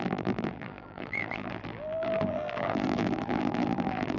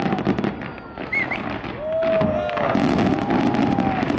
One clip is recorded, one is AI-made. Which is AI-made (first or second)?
first